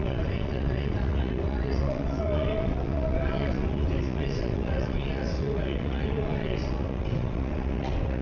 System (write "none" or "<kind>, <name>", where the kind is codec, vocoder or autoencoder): vocoder, WaveNeXt